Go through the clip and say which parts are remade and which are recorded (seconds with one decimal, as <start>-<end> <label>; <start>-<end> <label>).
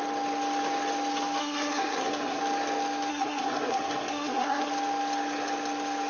0.0-1.4 recorded; 1.4-2.4 remade; 2.4-3.1 recorded; 3.1-4.7 remade; 4.7-6.1 recorded